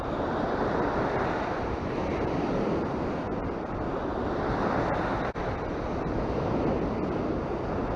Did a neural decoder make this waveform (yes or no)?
no